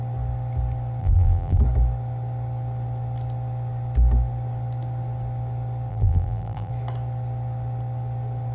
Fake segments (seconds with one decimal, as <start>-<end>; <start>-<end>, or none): 1.0-1.6; 5.9-6.7